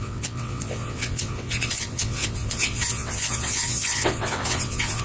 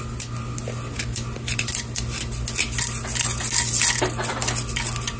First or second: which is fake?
first